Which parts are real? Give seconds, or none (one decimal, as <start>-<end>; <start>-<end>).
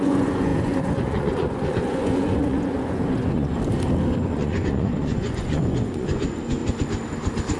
3.5-4.2; 6.6-7.6